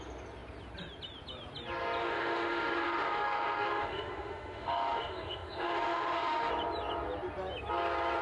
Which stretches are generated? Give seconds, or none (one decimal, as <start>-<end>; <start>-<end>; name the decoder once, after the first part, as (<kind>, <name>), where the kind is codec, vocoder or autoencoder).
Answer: 2.0-6.5 (autoencoder, DAC-VAE)